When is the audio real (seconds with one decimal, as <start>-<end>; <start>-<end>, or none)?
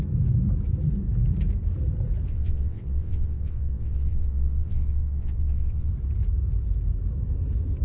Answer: 0.0-2.3; 5.9-7.8